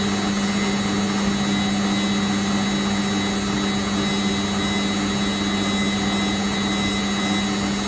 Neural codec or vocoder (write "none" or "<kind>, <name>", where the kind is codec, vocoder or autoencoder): none